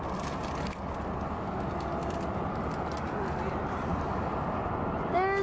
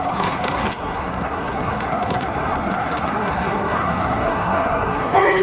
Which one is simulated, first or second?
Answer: second